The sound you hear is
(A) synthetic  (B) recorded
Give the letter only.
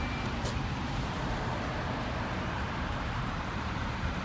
A